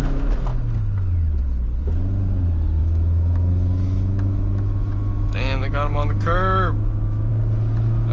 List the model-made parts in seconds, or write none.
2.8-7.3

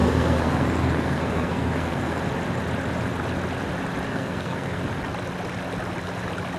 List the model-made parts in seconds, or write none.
0.0-2.2; 4.1-4.8

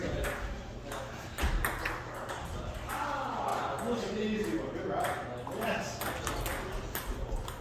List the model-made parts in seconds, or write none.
none

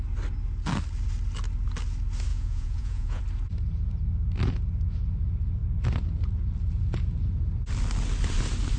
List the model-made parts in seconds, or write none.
2.3-3.2

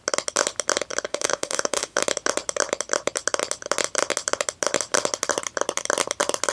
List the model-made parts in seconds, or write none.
1.1-2.0